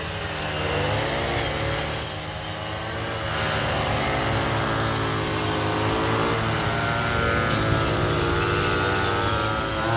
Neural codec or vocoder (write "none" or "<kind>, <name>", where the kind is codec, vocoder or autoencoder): none